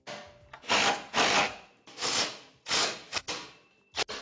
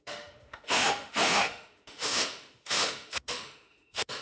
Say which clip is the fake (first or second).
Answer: second